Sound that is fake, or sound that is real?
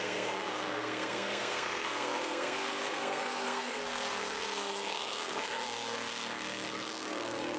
fake